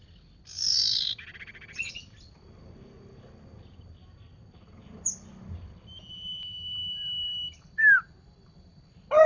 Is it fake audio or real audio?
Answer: real